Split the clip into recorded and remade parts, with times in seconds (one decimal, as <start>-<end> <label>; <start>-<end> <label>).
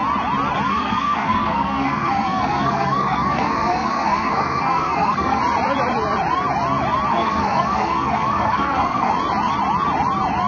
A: 0.0-0.7 recorded; 0.7-5.4 remade; 5.4-7.1 recorded; 7.1-9.1 remade; 9.1-10.5 recorded